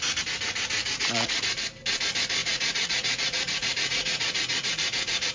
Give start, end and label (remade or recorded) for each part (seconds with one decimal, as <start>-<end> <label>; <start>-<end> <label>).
0.0-0.8 recorded; 0.8-1.4 remade; 1.4-2.4 recorded; 2.4-5.3 remade